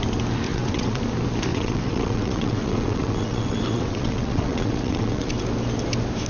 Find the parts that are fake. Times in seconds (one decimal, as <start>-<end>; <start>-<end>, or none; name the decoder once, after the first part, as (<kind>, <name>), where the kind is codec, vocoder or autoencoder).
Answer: 0.5-1.0 (vocoder, WaveNeXt); 1.5-5.3